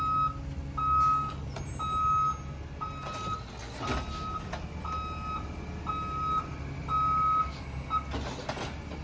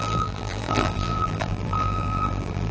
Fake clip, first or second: second